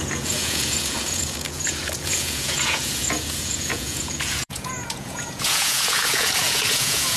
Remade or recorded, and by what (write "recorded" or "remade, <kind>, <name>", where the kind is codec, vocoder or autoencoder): remade, vocoder, Vocos